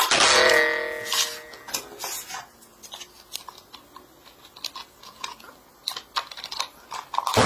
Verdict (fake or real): real